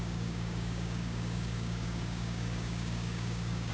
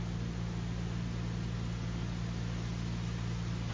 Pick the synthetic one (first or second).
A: first